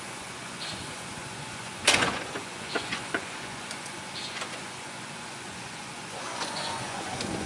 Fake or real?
fake